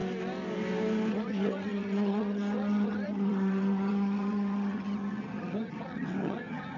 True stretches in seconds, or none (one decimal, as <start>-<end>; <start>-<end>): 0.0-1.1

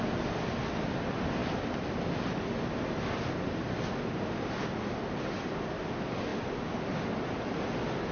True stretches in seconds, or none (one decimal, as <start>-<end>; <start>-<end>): 0.0-8.1

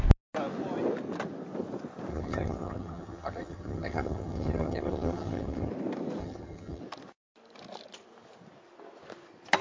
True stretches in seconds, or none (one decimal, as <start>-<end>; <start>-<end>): 0.0-2.1; 5.7-6.2; 6.8-9.6

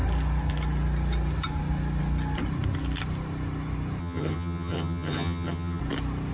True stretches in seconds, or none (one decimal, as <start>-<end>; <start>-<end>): 0.0-4.0; 5.8-6.3